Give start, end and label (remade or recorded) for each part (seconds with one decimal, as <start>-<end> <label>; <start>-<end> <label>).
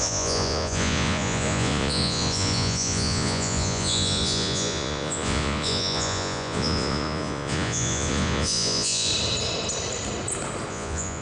0.0-9.1 remade; 9.1-10.7 recorded; 10.7-11.2 remade